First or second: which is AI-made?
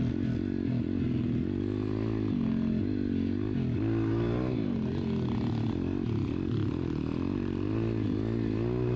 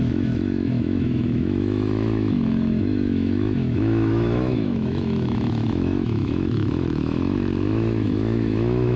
second